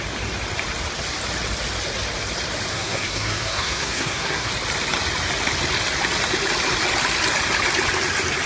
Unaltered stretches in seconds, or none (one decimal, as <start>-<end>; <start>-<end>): 0.0-2.7; 4.5-8.5